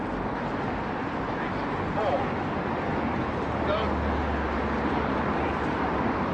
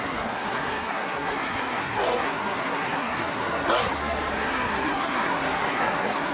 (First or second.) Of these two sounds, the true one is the first